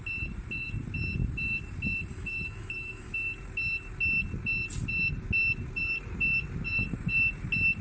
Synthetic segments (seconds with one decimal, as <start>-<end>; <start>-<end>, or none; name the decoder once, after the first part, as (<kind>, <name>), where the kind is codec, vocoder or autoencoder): 2.1-3.1 (autoencoder, DAC-VAE)